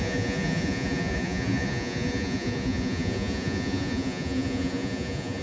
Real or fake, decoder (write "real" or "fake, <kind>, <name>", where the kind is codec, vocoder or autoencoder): fake, vocoder, Vocos